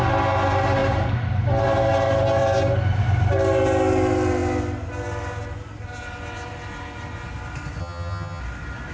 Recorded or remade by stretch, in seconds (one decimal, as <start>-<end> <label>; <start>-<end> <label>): 0.0-7.8 recorded; 7.8-8.4 remade; 8.4-8.9 recorded